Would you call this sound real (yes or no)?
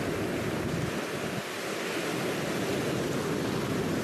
yes